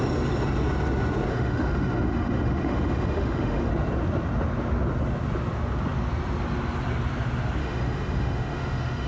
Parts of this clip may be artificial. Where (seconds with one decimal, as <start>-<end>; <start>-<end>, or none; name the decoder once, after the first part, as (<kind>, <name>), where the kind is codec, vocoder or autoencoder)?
1.3-3.7 (autoencoder, DAC-VAE); 7.6-9.1